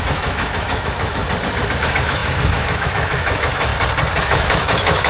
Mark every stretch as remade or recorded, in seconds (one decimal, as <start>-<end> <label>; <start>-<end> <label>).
0.0-1.2 remade; 1.2-1.8 recorded; 1.8-3.7 remade; 3.7-4.2 recorded; 4.2-5.1 remade